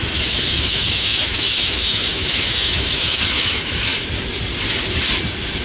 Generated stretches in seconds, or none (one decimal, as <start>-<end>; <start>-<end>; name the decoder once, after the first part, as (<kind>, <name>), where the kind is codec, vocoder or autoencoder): 0.0-3.9 (autoencoder, DAC-VAE)